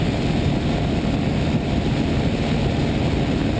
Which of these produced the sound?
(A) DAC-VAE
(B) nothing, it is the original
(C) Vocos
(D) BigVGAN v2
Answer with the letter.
B